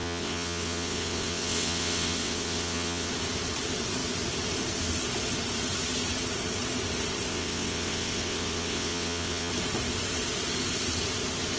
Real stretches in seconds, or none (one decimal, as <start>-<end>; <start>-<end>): 3.1-7.3; 9.5-11.6